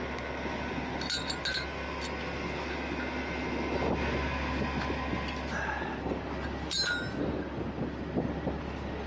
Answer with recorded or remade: recorded